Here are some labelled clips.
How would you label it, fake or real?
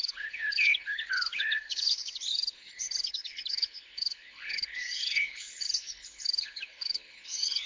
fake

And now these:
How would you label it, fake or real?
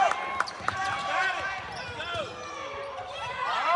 real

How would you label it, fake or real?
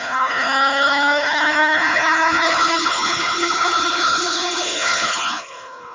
fake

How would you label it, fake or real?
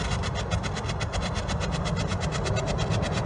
real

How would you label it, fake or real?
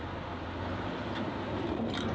real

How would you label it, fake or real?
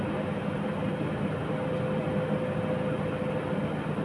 real